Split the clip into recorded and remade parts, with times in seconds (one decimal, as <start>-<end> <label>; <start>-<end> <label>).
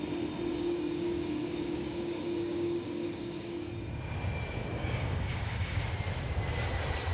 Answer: 0.0-0.5 recorded; 0.5-3.7 remade; 3.7-4.7 recorded; 4.7-5.8 remade; 5.8-7.1 recorded